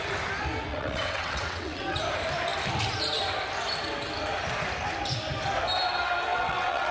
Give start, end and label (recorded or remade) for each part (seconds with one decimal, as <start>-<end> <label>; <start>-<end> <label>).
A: 0.0-0.7 recorded; 0.7-2.0 remade; 2.0-6.3 recorded; 6.3-6.9 remade